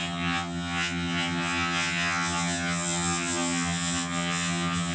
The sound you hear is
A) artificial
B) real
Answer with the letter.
A